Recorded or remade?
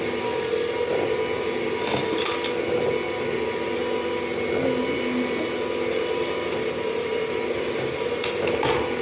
recorded